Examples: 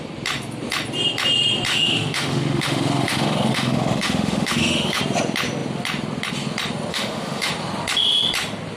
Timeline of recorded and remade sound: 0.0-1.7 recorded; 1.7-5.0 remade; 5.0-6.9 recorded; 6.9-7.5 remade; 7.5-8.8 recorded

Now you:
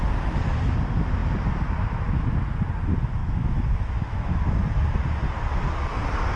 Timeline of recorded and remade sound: 0.0-3.2 recorded; 3.2-4.3 remade; 4.3-6.4 recorded